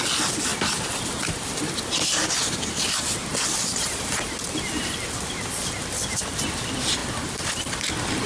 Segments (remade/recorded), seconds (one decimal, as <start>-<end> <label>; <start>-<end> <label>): 0.0-0.5 recorded; 0.5-1.8 remade; 1.8-3.3 recorded; 3.3-4.2 remade; 4.2-7.0 recorded; 7.0-7.8 remade; 7.8-8.3 recorded